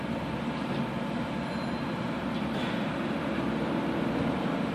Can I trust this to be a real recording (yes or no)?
yes